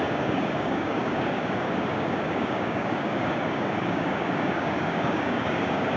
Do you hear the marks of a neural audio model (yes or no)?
yes